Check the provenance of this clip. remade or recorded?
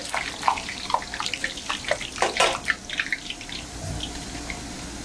recorded